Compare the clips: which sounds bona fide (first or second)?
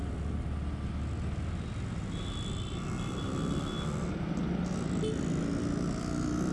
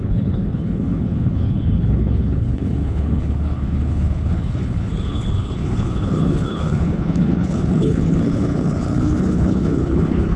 first